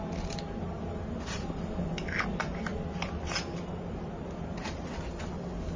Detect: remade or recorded recorded